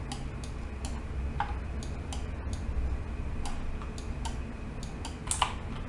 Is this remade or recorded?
recorded